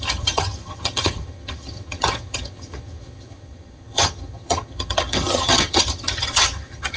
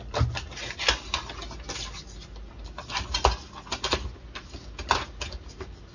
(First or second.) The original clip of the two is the second